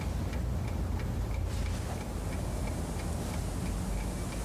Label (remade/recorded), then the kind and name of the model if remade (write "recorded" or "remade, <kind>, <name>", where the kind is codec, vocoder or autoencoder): recorded